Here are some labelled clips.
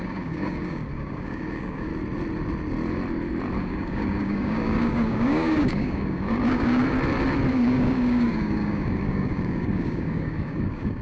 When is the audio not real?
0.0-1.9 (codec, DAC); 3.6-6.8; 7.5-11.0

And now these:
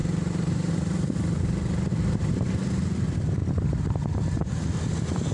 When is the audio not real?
0.0-0.7 (vocoder, BigVGAN v2); 1.9-2.7

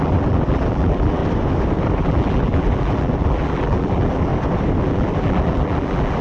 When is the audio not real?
0.0-1.2 (vocoder, BigVGAN v2); 2.0-4.3; 4.8-6.2

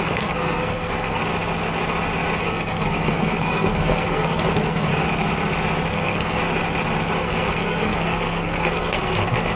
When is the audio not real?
0.0-1.2 (codec, SNAC); 2.4-4.9; 5.9-6.4; 7.2-9.6

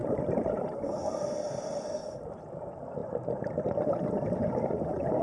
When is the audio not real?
0.0-1.5 (vocoder, BigVGAN v2)

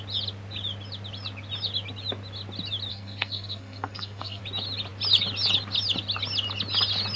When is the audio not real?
2.9-4.4 (codec, SNAC)